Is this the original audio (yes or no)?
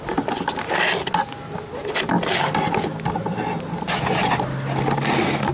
yes